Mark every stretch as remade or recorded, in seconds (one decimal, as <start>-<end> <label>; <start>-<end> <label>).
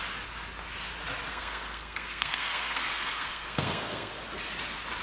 0.0-1.3 recorded; 1.3-4.1 remade; 4.1-5.0 recorded